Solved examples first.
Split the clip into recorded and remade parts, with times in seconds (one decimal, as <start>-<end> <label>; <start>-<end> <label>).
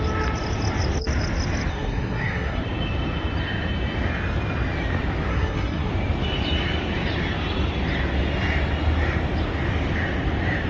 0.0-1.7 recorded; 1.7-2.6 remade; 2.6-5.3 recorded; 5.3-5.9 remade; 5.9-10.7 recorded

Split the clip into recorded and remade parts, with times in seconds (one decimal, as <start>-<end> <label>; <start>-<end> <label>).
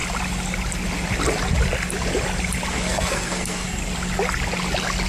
0.0-2.7 recorded; 2.7-3.8 remade; 3.8-5.1 recorded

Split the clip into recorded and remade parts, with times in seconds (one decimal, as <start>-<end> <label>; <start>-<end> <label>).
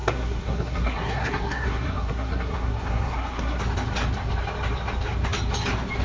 0.0-3.6 remade; 3.6-6.0 recorded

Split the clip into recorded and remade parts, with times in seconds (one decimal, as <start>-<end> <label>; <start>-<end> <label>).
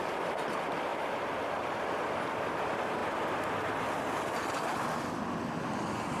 0.0-6.2 recorded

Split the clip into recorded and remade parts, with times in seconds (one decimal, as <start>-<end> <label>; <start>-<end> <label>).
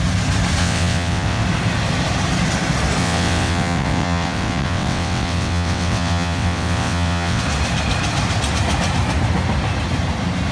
0.0-0.6 recorded; 0.6-1.4 remade; 1.4-3.0 recorded; 3.0-7.4 remade; 7.4-10.5 recorded